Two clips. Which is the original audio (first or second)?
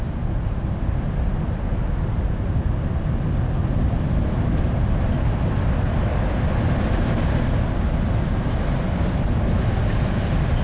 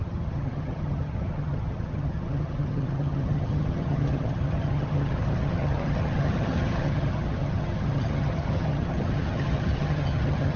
first